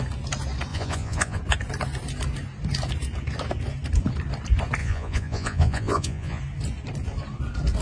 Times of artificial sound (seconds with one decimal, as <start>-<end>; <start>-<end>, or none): 0.7-1.4; 4.8-6.4